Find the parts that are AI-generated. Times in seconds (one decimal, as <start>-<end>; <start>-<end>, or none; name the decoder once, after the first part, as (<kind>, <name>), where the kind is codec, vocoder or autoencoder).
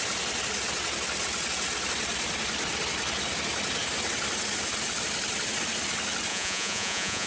6.3-7.3 (vocoder, Vocos)